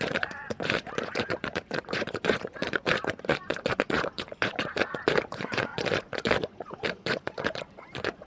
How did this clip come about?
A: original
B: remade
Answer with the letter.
B